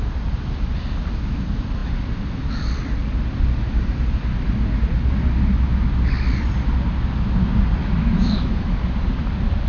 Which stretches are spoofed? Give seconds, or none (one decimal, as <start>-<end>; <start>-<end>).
7.8-8.8